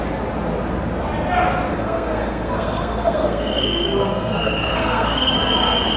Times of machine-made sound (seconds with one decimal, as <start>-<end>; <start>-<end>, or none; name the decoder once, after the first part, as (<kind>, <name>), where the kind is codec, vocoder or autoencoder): 1.7-5.3 (codec, SNAC)